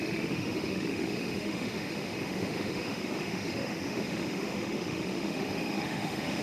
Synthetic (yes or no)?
yes